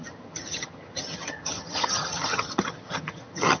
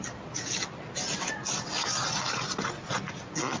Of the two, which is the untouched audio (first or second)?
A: second